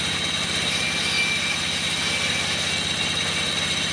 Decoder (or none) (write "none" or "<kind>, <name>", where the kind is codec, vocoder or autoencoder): none